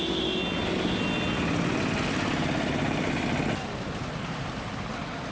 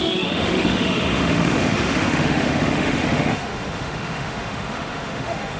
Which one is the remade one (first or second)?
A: second